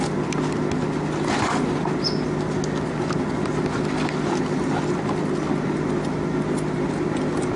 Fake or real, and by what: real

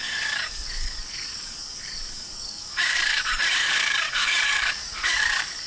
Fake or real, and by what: fake, codec, DAC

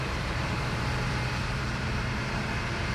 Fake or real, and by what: fake, vocoder, BigVGAN v2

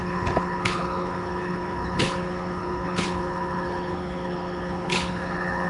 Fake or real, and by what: fake, codec, HILCodec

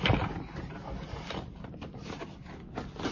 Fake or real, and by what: real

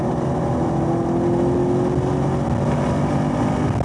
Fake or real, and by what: real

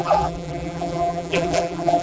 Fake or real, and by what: fake, vocoder, BigVGAN v2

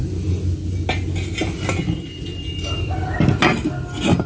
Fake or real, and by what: real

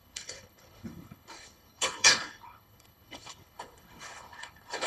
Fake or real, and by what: fake, codec, HILCodec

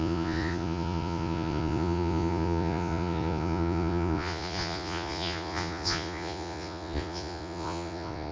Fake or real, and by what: fake, vocoder, Vocos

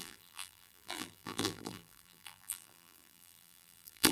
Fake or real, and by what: fake, vocoder, BigVGAN v2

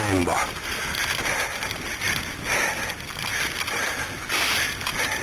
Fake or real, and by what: real